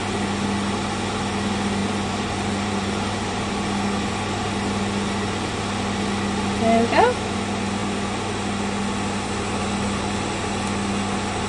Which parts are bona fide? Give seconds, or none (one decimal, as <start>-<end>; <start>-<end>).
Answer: 0.0-1.8; 3.5-11.5

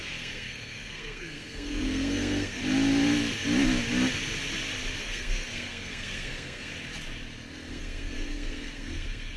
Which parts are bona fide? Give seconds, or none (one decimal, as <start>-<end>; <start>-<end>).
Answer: 2.6-5.0; 6.7-7.7

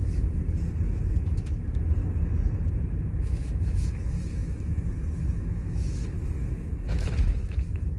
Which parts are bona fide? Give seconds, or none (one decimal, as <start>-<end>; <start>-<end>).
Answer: 0.4-3.1

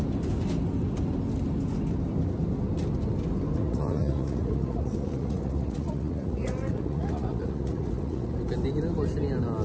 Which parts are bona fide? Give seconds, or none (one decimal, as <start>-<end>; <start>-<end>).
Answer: 0.0-3.6; 8.4-9.6